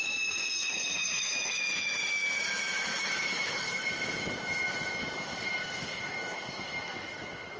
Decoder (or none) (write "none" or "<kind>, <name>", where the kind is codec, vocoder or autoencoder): autoencoder, DAC-VAE